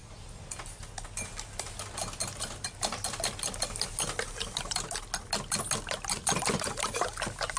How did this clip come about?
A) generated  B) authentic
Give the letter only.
B